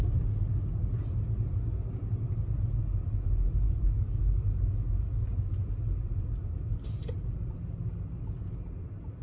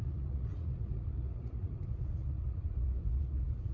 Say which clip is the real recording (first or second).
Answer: first